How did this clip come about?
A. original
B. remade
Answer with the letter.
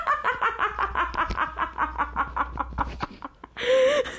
A